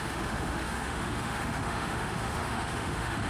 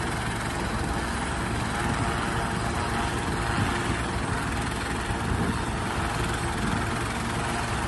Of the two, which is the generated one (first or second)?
first